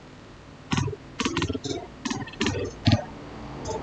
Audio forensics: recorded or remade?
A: recorded